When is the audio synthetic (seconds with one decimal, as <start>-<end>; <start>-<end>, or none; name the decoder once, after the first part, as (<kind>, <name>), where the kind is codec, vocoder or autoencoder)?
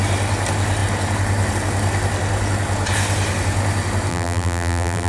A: 4.1-5.1 (vocoder, BigVGAN v2)